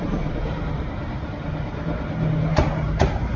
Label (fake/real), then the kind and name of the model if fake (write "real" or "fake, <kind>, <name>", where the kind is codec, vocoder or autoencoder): fake, vocoder, BigVGAN v2